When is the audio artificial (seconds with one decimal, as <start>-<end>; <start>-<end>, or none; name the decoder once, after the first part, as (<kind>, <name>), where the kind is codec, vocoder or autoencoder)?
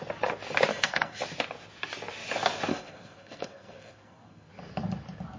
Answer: 0.7-1.2 (codec, SNAC); 2.7-4.5